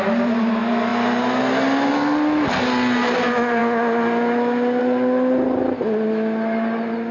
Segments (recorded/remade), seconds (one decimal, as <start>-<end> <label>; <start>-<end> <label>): 0.0-7.1 recorded